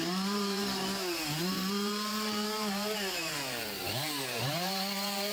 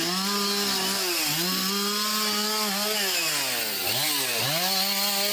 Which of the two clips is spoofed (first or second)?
first